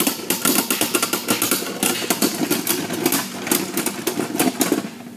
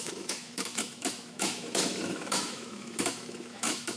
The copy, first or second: second